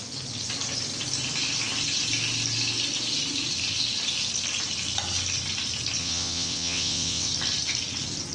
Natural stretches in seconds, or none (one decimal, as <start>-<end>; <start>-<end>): 0.0-6.0; 7.3-8.3